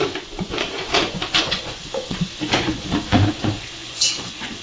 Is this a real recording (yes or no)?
no